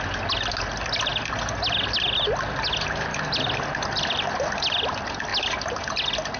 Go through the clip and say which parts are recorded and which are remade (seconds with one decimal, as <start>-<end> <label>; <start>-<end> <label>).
0.0-6.4 recorded